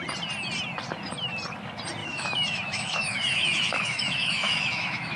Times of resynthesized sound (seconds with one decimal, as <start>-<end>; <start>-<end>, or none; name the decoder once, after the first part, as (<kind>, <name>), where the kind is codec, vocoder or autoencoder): 2.0-5.2 (autoencoder, DAC-VAE)